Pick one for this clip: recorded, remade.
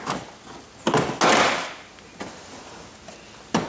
recorded